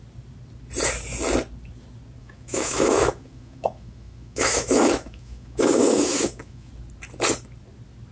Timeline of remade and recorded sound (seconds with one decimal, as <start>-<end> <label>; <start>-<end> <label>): 0.0-2.2 recorded; 2.2-6.7 remade; 6.7-8.1 recorded